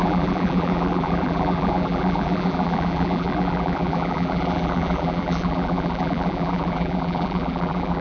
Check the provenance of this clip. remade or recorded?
remade